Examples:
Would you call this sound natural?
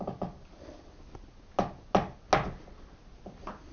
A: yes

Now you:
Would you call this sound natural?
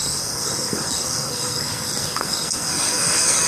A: no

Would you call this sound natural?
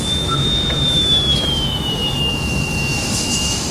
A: no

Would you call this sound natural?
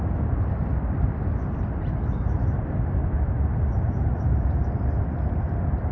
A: yes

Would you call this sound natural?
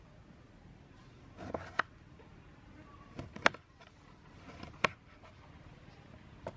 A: yes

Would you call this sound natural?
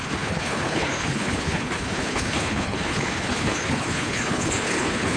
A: no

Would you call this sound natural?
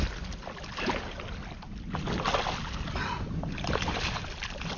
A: yes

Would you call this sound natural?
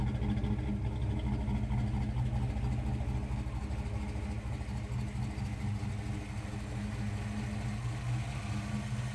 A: yes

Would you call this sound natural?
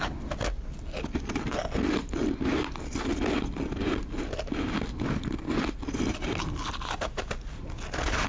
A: yes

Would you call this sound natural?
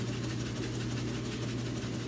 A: yes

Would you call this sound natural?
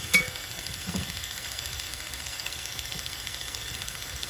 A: no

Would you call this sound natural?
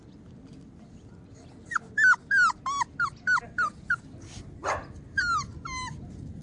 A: yes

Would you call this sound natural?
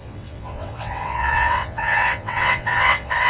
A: no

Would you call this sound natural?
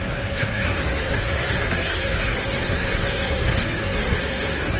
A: no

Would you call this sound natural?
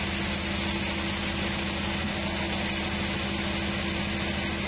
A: yes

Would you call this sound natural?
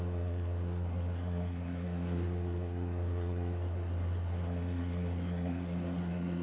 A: no